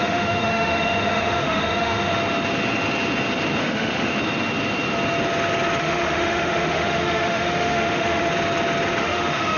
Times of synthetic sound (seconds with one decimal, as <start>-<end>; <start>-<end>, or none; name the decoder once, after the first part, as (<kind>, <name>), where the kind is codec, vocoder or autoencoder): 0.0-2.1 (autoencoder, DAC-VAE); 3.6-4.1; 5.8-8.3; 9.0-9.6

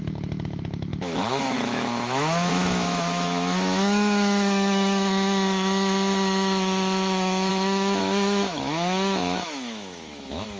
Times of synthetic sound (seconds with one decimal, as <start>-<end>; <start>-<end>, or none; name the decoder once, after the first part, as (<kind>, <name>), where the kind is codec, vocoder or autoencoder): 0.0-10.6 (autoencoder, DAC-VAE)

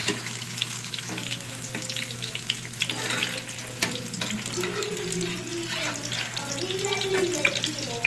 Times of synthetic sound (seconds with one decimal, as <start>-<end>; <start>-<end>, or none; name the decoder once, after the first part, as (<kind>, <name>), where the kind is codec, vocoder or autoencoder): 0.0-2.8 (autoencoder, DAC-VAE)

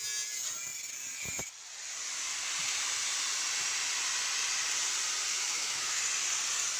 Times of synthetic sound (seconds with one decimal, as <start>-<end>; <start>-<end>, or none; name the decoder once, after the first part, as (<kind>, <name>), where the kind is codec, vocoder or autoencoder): 5.3-6.0 (autoencoder, DAC-VAE)

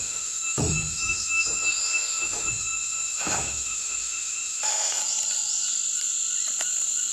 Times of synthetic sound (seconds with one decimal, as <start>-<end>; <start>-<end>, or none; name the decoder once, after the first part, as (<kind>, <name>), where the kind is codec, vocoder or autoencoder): 0.0-5.0 (autoencoder, DAC-VAE)

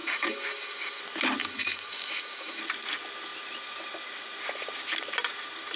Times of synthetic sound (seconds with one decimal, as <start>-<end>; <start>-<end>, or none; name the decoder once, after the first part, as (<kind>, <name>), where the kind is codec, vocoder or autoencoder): 0.0-1.0 (autoencoder, DAC-VAE); 1.4-2.6